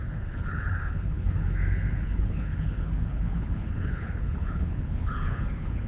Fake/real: fake